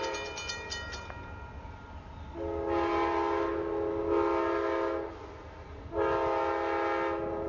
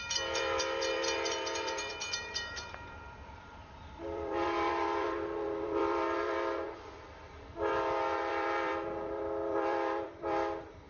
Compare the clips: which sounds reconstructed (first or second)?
second